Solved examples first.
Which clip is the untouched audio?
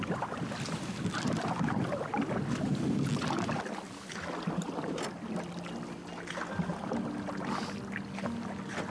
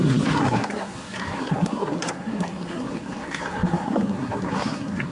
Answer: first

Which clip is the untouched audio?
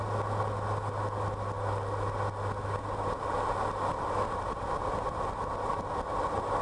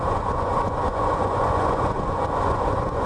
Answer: first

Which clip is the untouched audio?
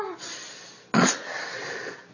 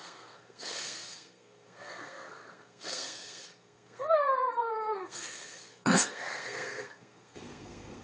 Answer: first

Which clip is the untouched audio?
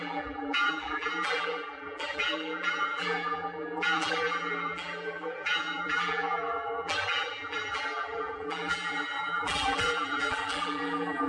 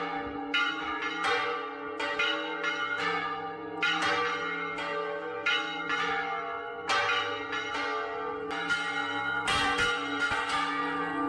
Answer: second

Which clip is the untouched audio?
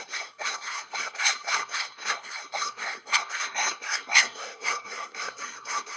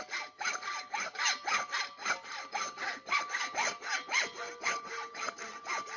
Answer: second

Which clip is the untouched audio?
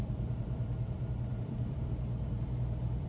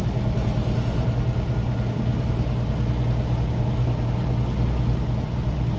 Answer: second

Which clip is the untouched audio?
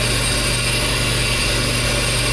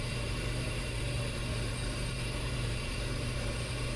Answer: first